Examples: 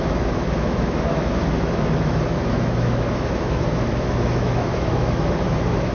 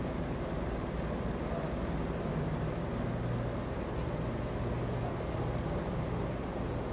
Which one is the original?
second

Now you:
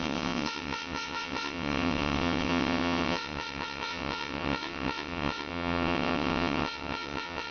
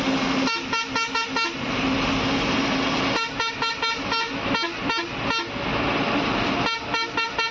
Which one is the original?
second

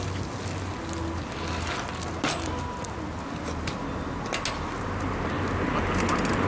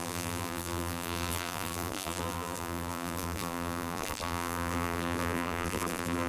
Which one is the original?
first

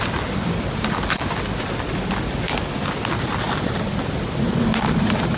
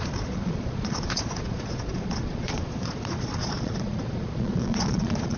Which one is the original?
first